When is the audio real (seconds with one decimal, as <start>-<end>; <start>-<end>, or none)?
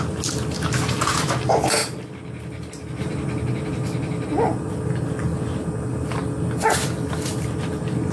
0.0-8.1